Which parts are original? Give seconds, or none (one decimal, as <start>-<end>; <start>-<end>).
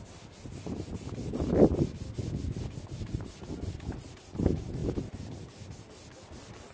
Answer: 0.0-6.7